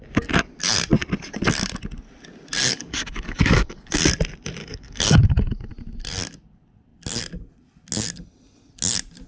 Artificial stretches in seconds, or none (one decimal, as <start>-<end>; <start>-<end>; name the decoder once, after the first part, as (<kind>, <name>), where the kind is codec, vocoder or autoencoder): 2.7-4.0 (codec, DAC); 4.6-5.7